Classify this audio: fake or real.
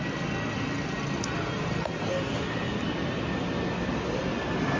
real